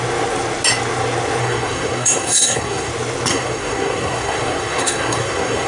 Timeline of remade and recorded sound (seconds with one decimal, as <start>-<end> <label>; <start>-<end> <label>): 0.0-1.4 recorded; 1.4-2.9 remade; 2.9-3.3 recorded; 3.3-5.7 remade